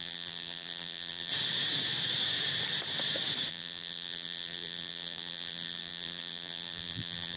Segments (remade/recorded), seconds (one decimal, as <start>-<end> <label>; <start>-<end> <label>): 0.0-1.3 remade; 1.3-3.5 recorded; 3.5-7.4 remade